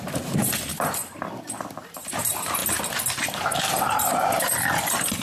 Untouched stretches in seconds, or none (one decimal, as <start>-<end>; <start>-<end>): 2.6-3.3